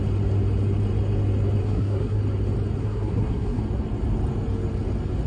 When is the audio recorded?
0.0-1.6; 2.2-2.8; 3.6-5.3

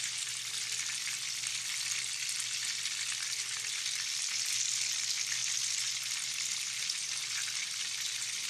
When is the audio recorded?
0.0-8.5

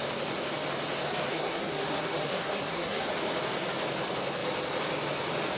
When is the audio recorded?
0.0-1.3; 3.0-5.6

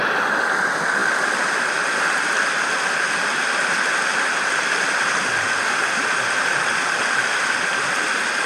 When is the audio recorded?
0.0-8.5

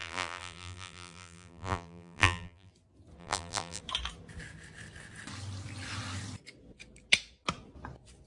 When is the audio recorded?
2.7-3.2; 3.8-8.3

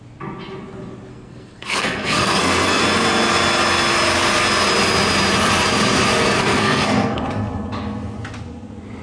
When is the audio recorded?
0.0-1.1; 2.8-6.4; 7.2-9.0

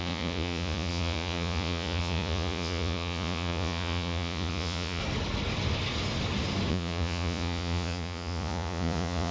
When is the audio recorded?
5.0-6.7